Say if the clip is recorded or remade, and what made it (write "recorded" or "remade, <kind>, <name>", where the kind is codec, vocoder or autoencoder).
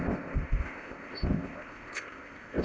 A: remade, codec, ZipCodec